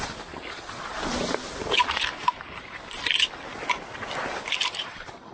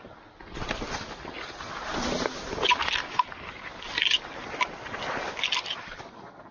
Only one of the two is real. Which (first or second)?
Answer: second